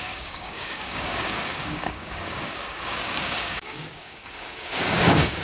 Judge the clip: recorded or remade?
remade